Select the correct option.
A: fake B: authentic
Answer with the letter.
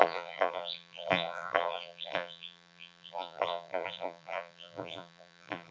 A